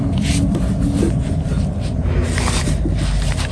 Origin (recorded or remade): recorded